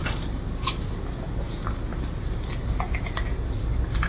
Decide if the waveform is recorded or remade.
recorded